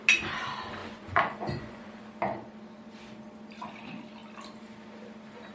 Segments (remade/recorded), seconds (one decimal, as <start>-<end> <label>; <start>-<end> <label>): 0.0-0.8 recorded; 0.8-2.0 remade; 2.0-5.5 recorded